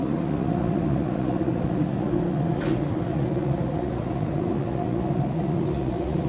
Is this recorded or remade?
remade